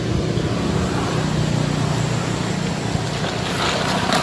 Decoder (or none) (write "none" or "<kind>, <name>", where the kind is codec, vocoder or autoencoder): none